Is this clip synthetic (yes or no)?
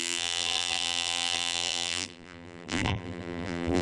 yes